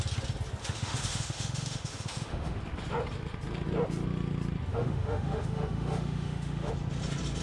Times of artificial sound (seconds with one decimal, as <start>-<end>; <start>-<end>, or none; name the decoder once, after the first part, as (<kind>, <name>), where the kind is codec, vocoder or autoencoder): 0.6-2.6 (autoencoder, DAC-VAE); 4.7-6.7